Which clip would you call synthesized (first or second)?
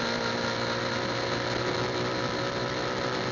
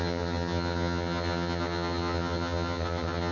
second